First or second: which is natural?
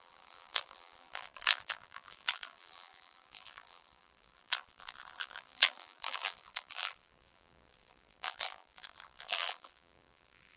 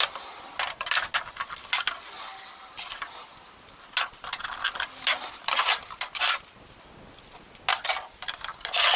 second